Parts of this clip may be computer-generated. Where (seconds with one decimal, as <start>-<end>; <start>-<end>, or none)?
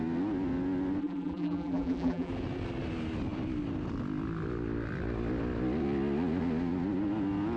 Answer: 1.0-2.3